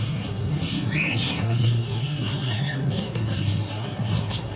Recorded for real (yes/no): no